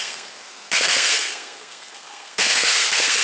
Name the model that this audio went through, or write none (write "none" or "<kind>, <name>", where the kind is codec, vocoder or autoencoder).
codec, SNAC